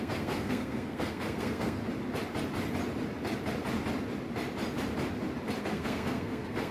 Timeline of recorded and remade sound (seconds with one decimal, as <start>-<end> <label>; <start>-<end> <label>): 0.0-1.8 remade; 1.8-5.6 recorded; 5.6-6.7 remade